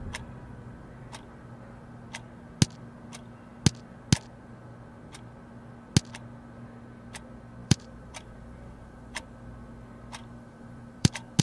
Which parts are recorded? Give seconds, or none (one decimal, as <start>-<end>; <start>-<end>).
0.0-7.6; 9.2-10.2